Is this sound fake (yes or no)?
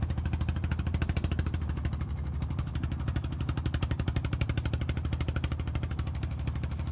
yes